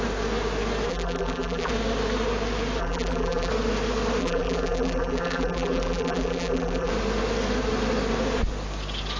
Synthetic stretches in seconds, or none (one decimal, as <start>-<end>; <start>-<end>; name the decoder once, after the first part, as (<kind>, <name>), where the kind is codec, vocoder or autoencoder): 0.9-1.7 (vocoder, BigVGAN v2); 2.8-3.5; 4.2-6.9